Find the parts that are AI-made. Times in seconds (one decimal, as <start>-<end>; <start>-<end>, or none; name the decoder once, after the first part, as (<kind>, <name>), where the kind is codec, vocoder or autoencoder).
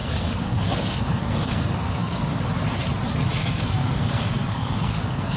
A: 0.0-2.4 (codec, SNAC); 3.4-5.4